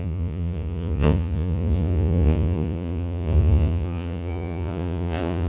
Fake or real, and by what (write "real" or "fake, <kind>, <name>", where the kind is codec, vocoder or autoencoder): fake, vocoder, Vocos